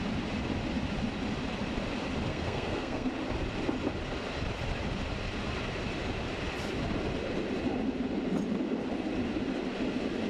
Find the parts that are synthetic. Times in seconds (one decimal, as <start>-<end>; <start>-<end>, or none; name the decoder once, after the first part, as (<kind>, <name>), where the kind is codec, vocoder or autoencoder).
2.3-3.1 (codec, SNAC)